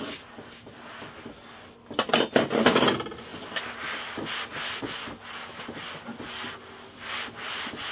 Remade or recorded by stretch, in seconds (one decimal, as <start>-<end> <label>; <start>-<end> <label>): 0.0-7.9 recorded